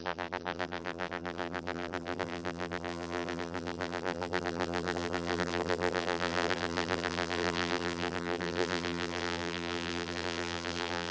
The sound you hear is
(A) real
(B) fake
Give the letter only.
B